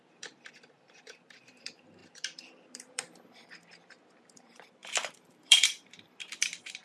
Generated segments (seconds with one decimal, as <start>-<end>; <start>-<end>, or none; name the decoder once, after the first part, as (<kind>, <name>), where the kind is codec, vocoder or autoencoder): 0.0-6.8 (vocoder, BigVGAN v2)